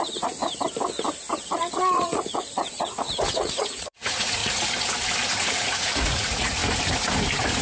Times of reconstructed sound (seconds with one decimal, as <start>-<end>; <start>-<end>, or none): 0.0-0.4; 1.5-4.4; 5.4-6.6